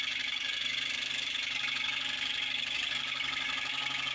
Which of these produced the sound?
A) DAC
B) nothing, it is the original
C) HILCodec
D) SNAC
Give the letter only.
A